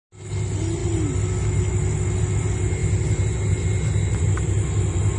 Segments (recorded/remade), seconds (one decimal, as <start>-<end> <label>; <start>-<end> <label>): 0.0-5.2 recorded